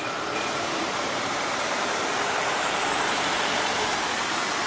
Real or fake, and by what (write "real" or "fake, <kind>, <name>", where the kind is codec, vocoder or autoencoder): fake, vocoder, BigVGAN v2